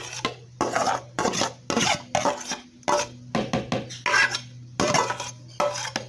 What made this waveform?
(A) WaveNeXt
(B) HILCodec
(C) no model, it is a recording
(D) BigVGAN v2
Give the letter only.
C